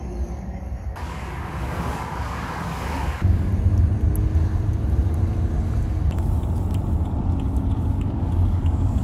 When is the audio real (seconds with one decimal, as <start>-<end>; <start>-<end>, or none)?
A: 3.5-7.9